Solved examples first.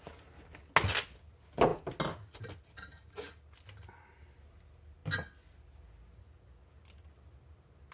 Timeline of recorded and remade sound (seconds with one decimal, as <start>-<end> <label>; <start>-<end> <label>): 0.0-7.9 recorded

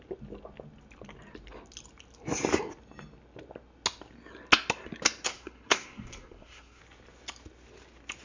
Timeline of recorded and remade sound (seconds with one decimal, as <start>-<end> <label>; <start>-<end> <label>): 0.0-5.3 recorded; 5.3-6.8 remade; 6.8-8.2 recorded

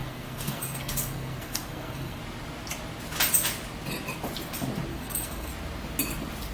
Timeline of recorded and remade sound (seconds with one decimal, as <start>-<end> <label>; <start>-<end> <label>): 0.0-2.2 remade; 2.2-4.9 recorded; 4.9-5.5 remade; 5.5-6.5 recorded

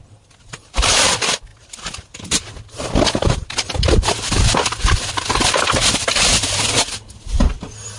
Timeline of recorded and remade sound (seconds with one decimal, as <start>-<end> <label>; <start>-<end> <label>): 0.0-8.0 recorded

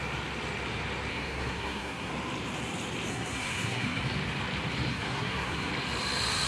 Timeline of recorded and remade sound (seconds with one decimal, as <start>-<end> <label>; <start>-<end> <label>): 0.0-1.1 recorded; 1.1-2.1 remade; 2.1-3.1 recorded; 3.1-4.0 remade; 4.0-4.9 recorded; 4.9-5.7 remade; 5.7-6.5 recorded

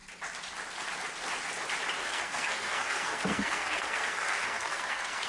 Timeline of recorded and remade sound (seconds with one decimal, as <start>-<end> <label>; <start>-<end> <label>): 0.0-2.0 recorded; 2.0-5.3 remade

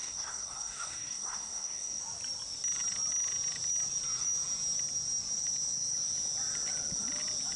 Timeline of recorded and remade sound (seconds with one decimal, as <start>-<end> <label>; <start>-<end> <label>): 0.0-2.0 remade; 2.0-7.6 recorded

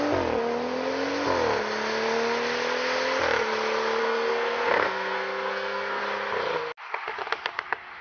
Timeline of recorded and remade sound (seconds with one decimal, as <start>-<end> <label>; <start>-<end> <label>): 0.0-4.0 recorded; 4.0-6.0 remade; 6.0-8.0 recorded